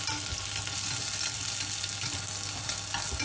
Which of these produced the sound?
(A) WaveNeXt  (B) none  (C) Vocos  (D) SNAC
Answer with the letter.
B